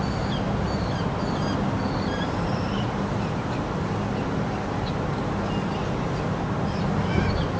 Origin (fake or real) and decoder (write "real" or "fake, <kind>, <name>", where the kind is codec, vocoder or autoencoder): real